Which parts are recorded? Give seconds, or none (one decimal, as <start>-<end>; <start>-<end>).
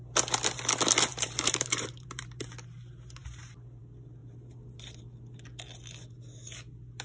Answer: 0.0-1.1; 2.4-4.2; 5.0-7.0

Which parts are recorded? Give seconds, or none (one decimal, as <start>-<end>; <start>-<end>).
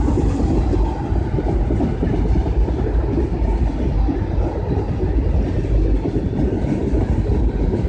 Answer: 0.0-7.9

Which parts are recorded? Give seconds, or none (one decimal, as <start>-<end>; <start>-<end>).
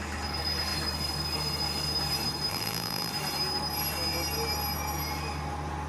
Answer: 0.0-2.5; 3.1-5.9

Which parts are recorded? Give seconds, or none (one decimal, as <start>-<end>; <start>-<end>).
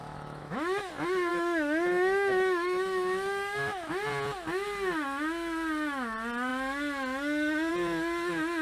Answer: 0.9-1.3; 3.9-8.6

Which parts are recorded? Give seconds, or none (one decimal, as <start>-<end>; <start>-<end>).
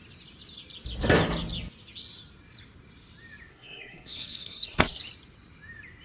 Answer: 0.0-3.5; 5.0-6.0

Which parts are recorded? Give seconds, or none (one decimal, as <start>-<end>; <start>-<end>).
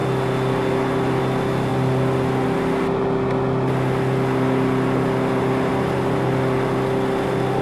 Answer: 0.0-7.6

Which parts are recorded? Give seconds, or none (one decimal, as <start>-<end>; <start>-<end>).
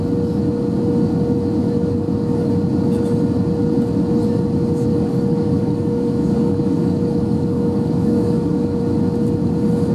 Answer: 0.0-1.6; 2.5-4.9; 8.8-9.9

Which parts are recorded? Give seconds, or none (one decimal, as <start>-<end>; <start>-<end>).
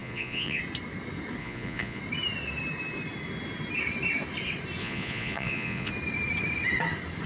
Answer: 0.6-1.4; 2.0-4.8; 5.9-7.3